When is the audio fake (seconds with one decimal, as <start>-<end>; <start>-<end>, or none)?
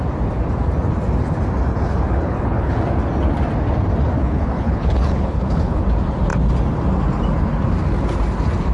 1.7-2.8; 4.2-5.8